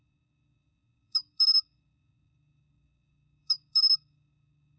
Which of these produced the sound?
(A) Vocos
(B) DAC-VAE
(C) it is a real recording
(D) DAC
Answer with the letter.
D